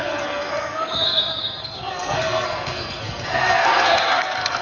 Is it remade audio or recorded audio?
remade